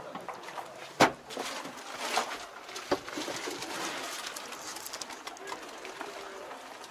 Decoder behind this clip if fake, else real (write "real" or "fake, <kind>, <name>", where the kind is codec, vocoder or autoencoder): real